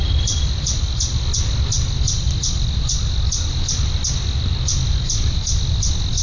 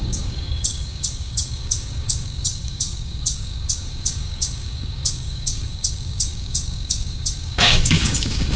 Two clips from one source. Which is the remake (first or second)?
second